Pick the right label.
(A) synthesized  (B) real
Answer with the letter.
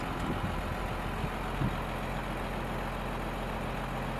B